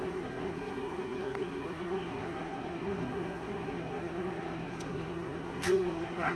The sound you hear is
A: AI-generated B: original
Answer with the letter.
A